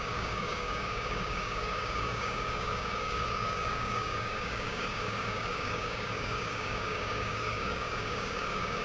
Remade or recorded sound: remade